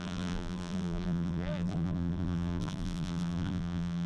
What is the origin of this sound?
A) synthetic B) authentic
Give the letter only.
A